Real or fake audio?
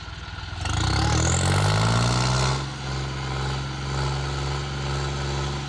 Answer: real